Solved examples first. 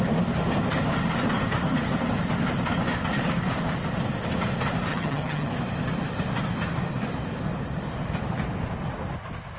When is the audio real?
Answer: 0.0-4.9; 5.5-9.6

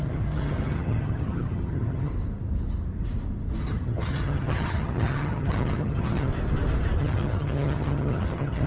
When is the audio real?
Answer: 2.1-3.6; 6.3-7.0

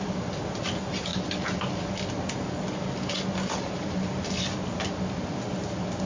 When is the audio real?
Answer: 0.0-6.1